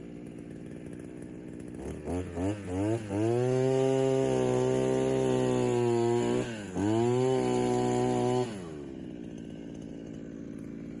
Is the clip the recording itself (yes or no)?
yes